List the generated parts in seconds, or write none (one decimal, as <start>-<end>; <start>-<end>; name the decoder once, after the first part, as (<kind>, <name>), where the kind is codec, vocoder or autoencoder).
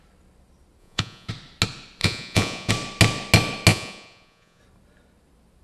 0.8-1.3 (vocoder, Vocos); 2.0-2.7; 3.7-4.6